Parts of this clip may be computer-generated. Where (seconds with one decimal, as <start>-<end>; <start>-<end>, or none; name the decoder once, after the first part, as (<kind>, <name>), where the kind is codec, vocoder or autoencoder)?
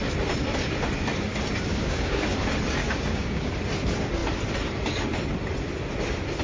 1.7-2.4 (codec, DAC); 2.8-3.5